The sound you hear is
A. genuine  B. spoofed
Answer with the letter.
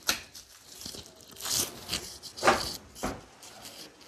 A